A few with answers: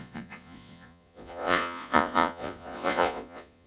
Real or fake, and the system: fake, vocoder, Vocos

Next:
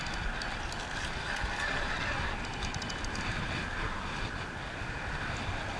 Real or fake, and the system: real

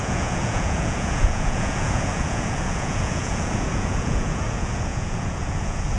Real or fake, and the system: fake, vocoder, Vocos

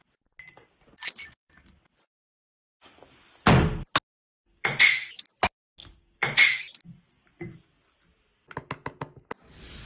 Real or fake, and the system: real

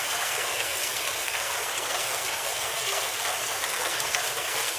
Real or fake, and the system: fake, codec, SNAC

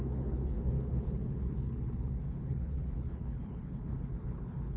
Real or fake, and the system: fake, codec, HILCodec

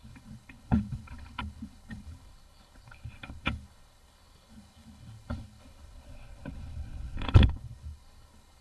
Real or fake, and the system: fake, codec, HILCodec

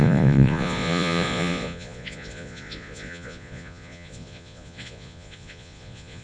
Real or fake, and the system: fake, vocoder, Vocos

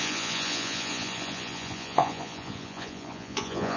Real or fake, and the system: fake, vocoder, Vocos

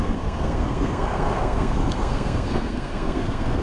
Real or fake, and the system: fake, codec, SNAC